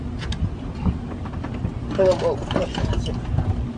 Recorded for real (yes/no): yes